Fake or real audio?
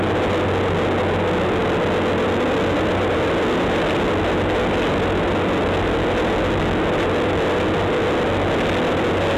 real